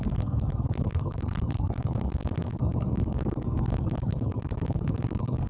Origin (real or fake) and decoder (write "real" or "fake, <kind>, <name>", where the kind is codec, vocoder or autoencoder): fake, codec, SNAC